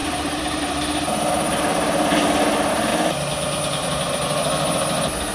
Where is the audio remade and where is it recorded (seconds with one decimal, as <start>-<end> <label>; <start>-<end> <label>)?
0.0-0.6 remade; 0.6-5.3 recorded